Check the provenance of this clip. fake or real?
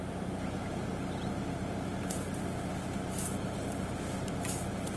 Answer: fake